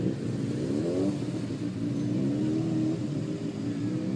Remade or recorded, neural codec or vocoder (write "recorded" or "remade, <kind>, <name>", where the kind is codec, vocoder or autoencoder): recorded